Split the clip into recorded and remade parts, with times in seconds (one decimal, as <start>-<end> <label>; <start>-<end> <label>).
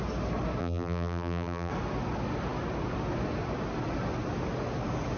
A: 0.0-0.6 recorded; 0.6-1.7 remade; 1.7-5.2 recorded